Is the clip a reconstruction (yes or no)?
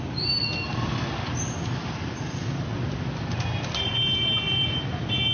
no